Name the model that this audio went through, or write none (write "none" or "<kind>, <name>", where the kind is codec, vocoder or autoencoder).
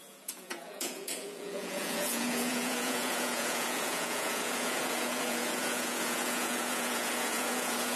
vocoder, Vocos